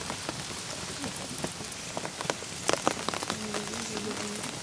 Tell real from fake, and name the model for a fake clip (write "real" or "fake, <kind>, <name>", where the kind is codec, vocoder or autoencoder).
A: real